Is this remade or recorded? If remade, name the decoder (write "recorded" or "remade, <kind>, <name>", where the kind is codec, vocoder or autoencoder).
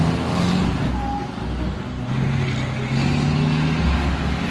recorded